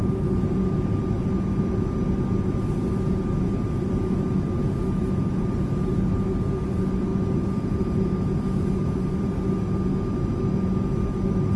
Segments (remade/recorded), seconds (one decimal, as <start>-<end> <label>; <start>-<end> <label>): 0.0-11.6 recorded